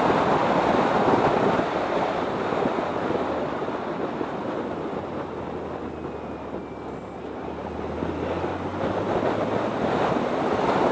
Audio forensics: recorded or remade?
recorded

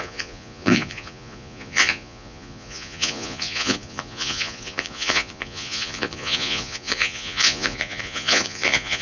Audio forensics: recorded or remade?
remade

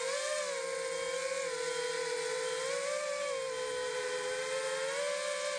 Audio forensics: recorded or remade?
recorded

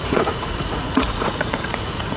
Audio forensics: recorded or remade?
remade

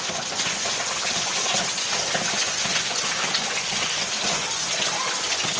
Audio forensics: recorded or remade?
remade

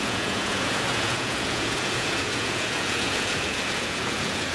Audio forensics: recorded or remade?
remade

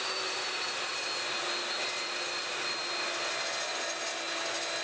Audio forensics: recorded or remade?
recorded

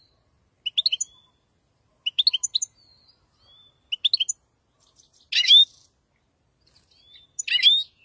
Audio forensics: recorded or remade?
recorded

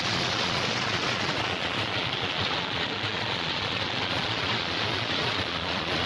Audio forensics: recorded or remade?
remade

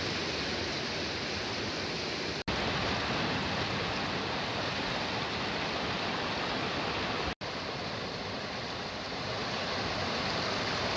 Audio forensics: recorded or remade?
recorded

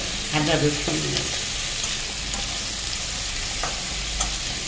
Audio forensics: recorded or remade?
recorded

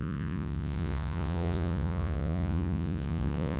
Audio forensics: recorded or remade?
remade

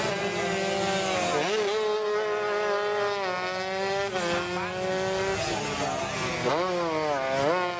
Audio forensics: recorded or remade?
recorded